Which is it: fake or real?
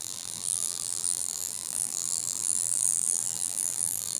fake